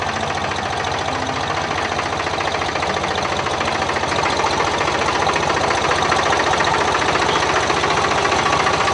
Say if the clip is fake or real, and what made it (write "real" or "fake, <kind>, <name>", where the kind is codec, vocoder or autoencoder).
real